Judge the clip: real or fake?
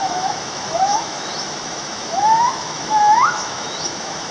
fake